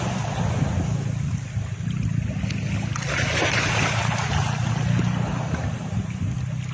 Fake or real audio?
real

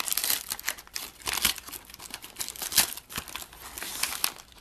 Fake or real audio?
real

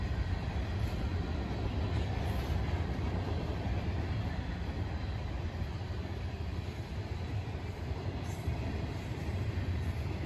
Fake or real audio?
fake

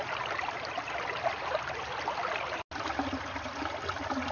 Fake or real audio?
real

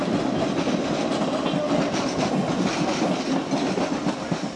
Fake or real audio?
real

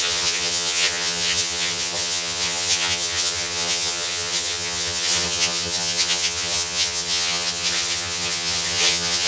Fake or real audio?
fake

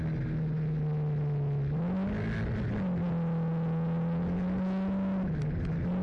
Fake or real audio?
real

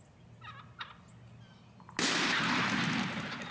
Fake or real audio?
real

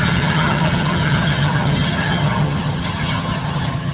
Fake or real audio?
fake